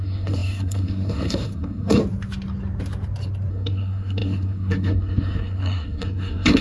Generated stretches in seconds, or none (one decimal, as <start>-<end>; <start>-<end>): 0.0-2.0; 3.5-6.6